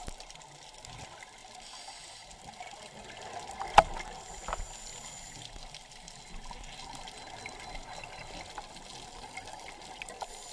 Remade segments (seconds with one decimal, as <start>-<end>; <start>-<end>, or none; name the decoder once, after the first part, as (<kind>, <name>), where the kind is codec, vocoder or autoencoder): none